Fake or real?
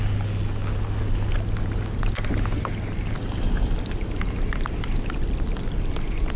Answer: real